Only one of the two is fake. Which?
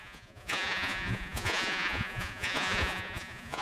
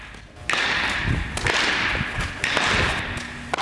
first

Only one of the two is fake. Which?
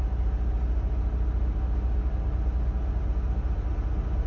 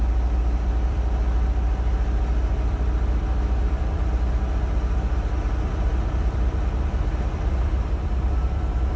second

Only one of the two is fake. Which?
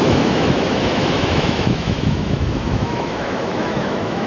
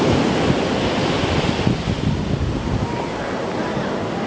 first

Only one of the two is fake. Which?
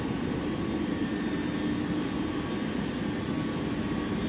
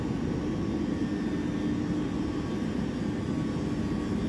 first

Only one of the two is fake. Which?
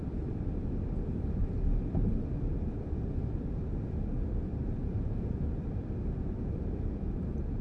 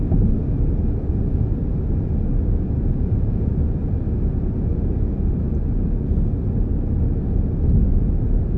first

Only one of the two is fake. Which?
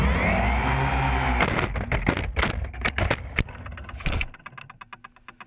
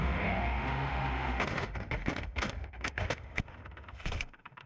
second